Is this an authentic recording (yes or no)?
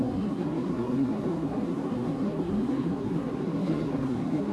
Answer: no